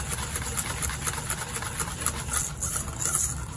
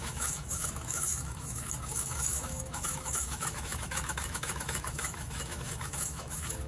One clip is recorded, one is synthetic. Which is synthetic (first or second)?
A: second